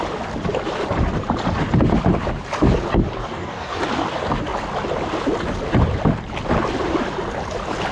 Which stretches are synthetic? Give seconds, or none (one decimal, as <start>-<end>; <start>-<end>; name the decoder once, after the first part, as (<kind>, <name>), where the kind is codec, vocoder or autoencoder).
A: 3.2-3.8 (codec, DAC)